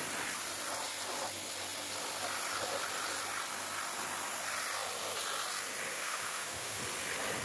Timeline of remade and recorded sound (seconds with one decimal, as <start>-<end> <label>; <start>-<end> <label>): 0.0-5.9 recorded; 5.9-6.8 remade; 6.8-7.4 recorded